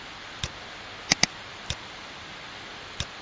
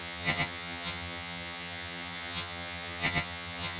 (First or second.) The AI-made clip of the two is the second